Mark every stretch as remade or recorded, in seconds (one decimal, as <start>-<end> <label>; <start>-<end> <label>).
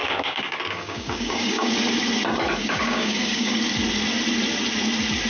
0.0-1.7 remade; 1.7-2.6 recorded; 2.6-3.6 remade; 3.6-5.3 recorded